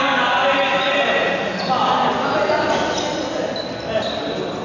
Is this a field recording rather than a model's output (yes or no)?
yes